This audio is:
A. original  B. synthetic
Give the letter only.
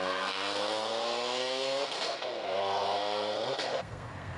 B